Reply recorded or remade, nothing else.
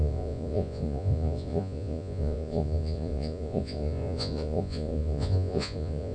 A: remade